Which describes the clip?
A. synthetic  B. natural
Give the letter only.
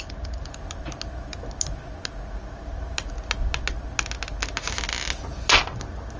B